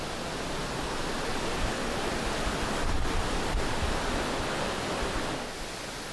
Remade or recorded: recorded